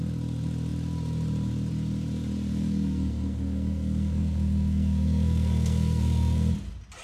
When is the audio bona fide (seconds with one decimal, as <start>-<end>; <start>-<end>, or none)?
0.0-2.5; 6.5-7.0